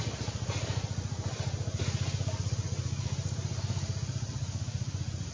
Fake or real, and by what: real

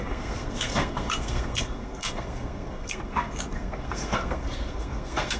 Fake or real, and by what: fake, codec, SNAC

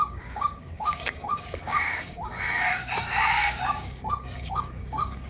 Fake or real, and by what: fake, codec, DAC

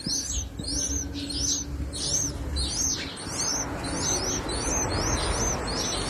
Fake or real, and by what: real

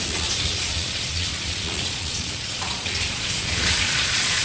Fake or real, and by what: fake, vocoder, Vocos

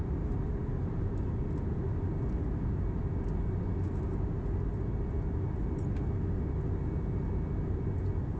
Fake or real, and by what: real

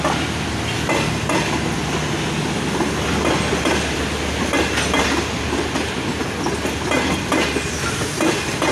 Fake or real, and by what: real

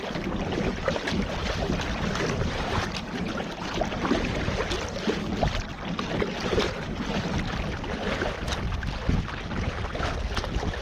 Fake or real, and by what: real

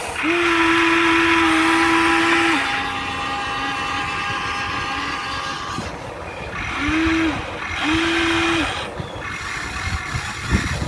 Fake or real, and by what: real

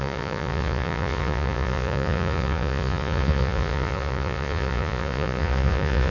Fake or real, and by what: fake, vocoder, Vocos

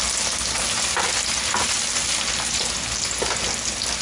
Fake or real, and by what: real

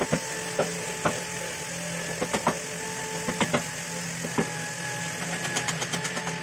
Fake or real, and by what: real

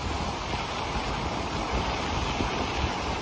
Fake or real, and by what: real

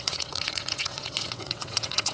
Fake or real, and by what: fake, vocoder, WaveNeXt